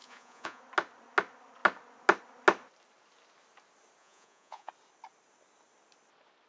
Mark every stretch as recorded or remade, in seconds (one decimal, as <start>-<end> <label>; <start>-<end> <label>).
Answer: 0.0-0.6 remade; 0.6-4.0 recorded; 4.0-4.7 remade; 4.7-6.5 recorded